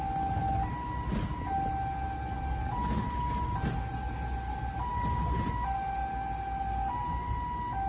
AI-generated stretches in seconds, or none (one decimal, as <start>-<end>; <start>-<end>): none